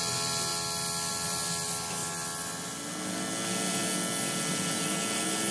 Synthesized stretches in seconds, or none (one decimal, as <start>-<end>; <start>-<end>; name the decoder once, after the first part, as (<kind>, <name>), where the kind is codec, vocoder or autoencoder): none